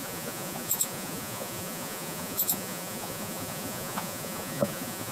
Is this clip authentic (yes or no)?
no